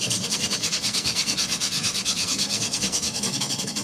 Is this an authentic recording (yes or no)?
no